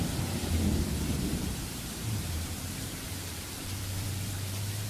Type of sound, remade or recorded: remade